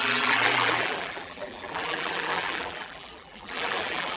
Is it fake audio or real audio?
fake